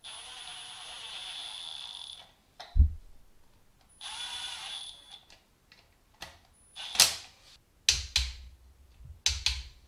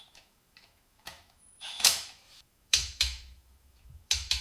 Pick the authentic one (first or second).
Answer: first